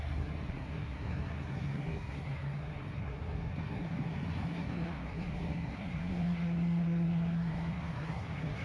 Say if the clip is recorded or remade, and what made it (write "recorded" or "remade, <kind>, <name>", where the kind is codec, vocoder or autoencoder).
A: remade, codec, SNAC